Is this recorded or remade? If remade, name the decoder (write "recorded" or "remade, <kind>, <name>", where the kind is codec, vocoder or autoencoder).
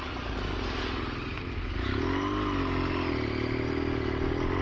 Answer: recorded